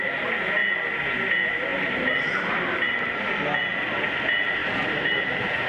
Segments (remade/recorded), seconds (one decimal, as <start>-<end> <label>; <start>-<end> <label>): 0.0-1.7 recorded; 1.7-3.4 remade; 3.4-4.6 recorded; 4.6-5.7 remade